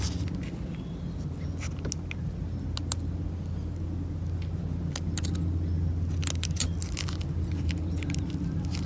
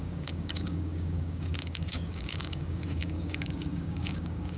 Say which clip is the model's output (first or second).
second